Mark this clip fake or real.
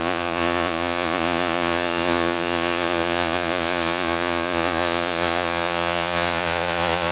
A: fake